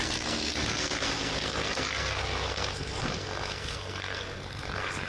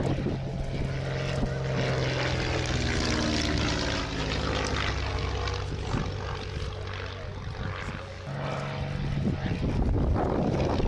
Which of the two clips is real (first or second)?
second